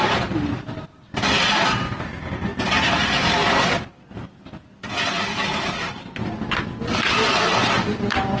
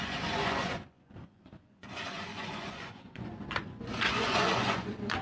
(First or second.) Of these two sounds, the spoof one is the second